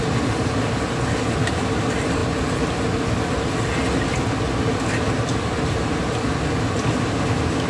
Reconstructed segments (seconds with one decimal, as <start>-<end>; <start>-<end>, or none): none